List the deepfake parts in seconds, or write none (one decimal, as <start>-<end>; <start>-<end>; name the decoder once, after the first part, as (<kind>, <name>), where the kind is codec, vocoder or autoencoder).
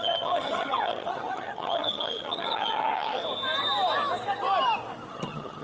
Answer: 0.0-3.2 (vocoder, HiFi-GAN); 5.1-5.6